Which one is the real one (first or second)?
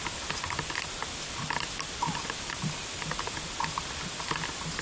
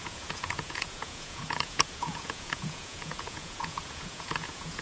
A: first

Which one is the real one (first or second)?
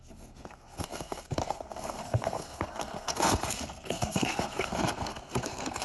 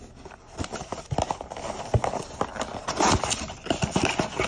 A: second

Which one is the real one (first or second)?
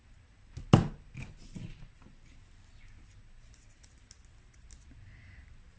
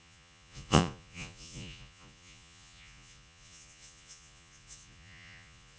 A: first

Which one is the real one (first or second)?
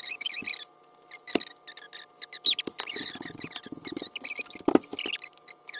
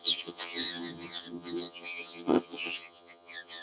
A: first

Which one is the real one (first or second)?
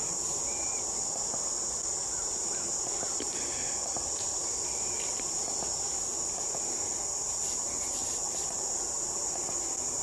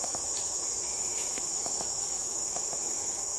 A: first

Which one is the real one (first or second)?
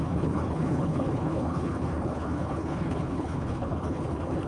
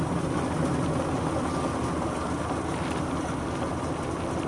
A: second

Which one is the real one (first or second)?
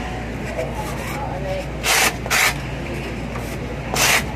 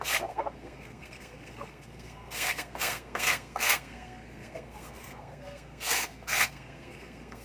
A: first